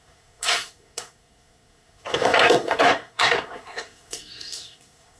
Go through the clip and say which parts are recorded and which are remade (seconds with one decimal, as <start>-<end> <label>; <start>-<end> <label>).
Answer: 0.0-5.2 remade